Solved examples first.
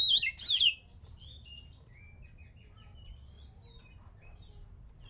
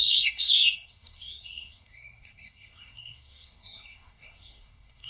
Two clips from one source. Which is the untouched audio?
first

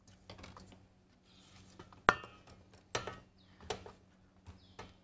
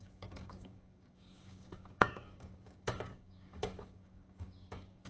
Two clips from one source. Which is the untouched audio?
first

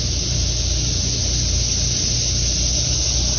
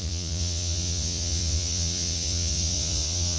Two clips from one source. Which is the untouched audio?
first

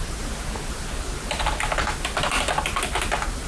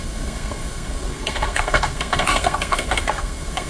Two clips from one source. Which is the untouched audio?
first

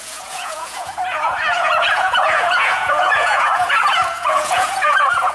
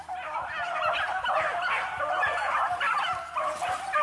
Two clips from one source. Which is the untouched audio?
second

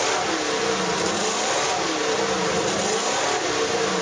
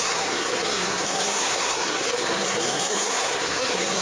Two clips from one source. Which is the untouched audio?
first